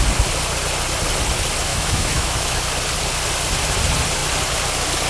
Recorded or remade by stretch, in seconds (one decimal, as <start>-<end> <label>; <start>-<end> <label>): 0.0-1.7 recorded; 1.7-2.6 remade; 2.6-5.1 recorded